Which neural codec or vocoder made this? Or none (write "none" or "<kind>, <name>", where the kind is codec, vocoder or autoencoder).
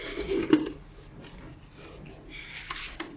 none